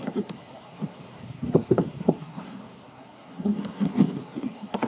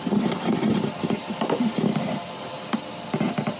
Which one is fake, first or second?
first